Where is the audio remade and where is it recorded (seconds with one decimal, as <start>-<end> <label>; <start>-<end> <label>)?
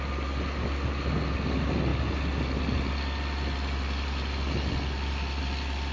0.0-5.9 recorded